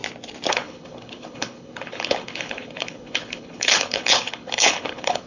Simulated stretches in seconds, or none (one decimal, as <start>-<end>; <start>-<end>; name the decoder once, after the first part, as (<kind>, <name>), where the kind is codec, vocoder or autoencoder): 0.5-5.3 (codec, HILCodec)